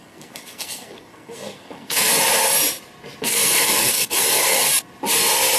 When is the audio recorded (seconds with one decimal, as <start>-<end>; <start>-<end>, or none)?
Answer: 2.1-3.2; 4.7-5.6